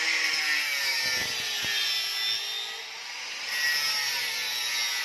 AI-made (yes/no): no